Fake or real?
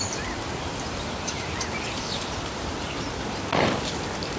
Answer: real